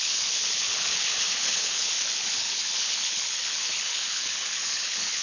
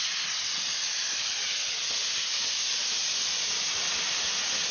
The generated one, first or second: first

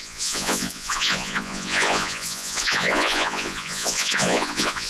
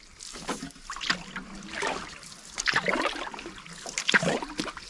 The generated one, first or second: first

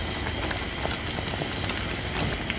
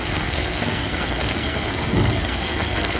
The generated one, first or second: second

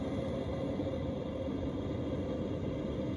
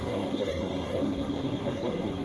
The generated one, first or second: second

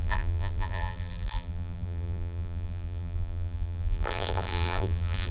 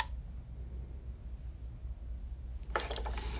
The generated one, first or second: first